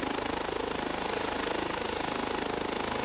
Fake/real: real